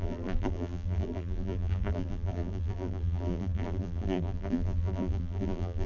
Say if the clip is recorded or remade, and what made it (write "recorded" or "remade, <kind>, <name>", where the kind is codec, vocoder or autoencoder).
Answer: remade, vocoder, BigVGAN v2